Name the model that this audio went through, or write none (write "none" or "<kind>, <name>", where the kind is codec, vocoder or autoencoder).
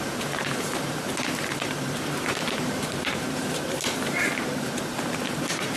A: vocoder, BigVGAN v2